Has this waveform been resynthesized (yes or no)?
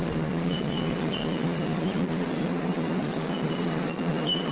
yes